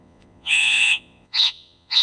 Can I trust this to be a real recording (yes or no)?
no